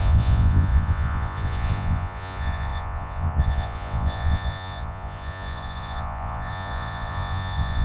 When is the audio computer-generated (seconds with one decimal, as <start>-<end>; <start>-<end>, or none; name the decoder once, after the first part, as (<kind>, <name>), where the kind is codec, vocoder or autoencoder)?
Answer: 0.0-7.8 (vocoder, Vocos)